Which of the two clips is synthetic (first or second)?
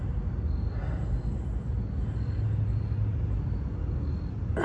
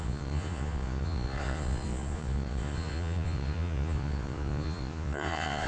second